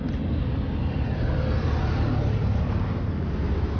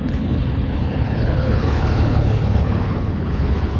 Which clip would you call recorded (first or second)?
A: first